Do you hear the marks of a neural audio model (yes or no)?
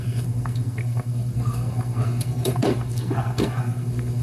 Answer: yes